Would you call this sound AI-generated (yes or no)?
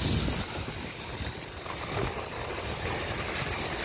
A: no